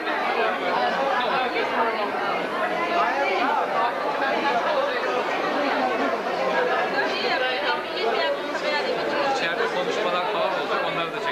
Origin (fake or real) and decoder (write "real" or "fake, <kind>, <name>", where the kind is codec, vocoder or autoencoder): real